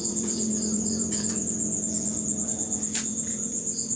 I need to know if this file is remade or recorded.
remade